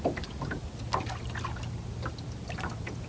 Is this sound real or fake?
real